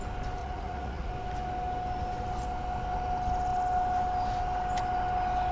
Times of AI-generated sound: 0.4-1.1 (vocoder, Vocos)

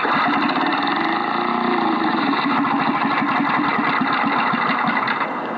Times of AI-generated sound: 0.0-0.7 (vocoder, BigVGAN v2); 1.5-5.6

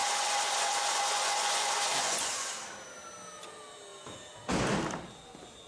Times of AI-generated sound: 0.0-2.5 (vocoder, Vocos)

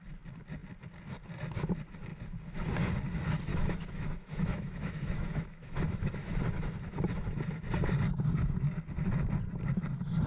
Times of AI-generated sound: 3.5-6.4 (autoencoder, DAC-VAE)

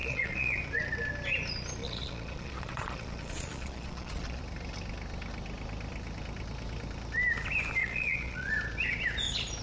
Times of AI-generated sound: 0.0-0.6 (vocoder, Vocos); 1.8-4.4; 7.8-8.5

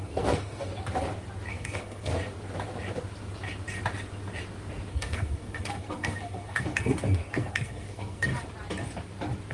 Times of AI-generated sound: 0.0-0.7 (codec, SNAC); 1.5-2.1; 4.9-8.3